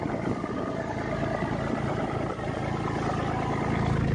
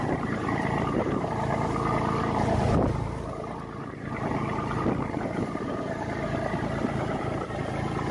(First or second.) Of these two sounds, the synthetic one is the second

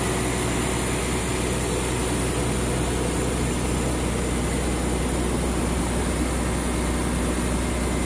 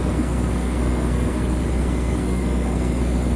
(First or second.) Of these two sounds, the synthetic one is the second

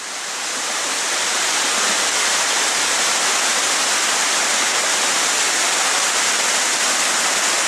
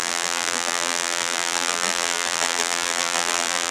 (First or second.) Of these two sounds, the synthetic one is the second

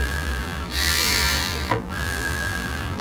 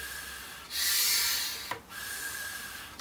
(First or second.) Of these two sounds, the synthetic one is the first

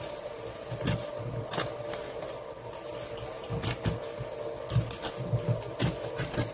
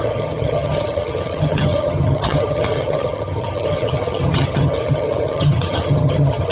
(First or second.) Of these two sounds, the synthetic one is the second